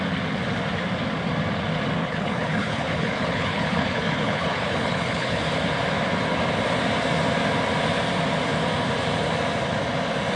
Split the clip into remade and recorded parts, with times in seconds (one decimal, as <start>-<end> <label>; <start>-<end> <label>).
0.0-2.0 recorded; 2.0-5.4 remade; 5.4-10.4 recorded